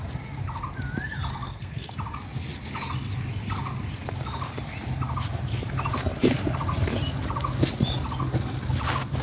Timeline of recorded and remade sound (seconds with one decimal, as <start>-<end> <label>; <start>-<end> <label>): 0.0-1.3 recorded; 1.3-1.9 remade; 1.9-9.2 recorded